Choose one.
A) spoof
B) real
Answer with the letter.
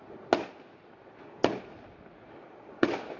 B